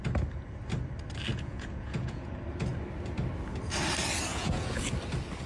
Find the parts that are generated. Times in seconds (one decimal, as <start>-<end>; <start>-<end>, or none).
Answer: 1.3-2.3; 4.3-4.8